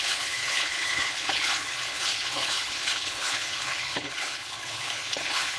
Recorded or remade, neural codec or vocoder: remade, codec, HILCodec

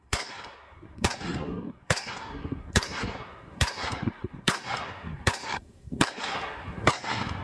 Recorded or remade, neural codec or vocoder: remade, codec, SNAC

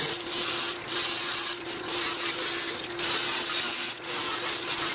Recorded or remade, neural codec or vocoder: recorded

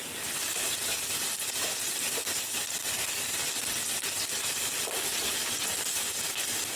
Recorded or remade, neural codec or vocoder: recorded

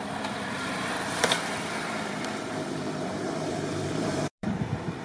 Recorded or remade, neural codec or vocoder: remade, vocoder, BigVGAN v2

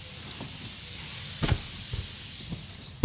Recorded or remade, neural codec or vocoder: recorded